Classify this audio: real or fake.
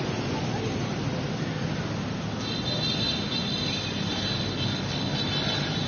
real